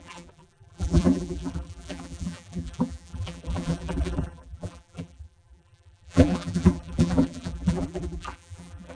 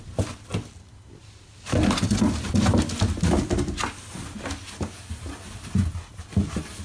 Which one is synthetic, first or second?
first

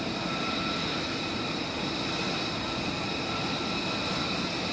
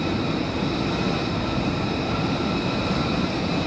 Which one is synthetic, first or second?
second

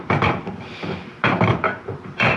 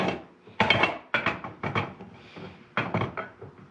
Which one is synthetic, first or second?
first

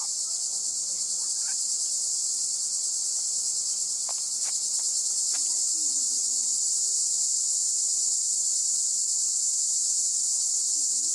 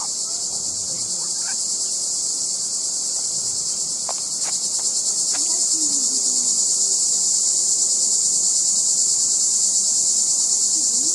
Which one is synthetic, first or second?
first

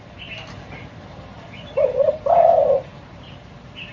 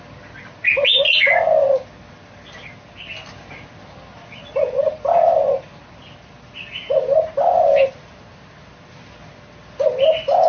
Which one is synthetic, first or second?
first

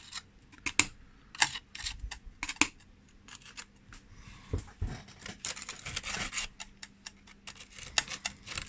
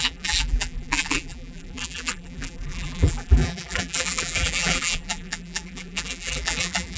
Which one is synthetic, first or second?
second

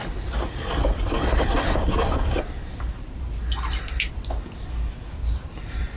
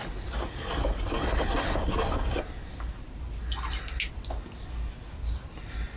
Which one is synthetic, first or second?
first